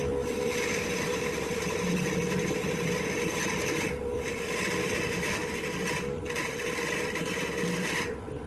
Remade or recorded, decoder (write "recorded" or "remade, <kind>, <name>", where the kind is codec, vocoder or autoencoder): recorded